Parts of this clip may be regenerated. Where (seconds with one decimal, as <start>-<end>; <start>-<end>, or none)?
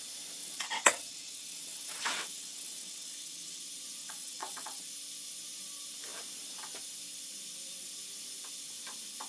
0.4-3.6; 4.0-4.8